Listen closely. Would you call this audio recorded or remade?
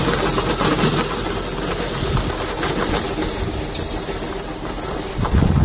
recorded